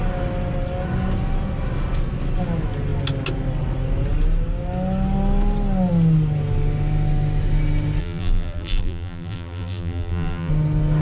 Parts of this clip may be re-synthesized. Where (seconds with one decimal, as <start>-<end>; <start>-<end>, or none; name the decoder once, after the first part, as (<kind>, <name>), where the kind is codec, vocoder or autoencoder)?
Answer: 8.0-10.5 (vocoder, BigVGAN v2)